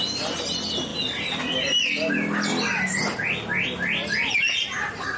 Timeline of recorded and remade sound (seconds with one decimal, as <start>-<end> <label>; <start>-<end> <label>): 0.0-5.2 recorded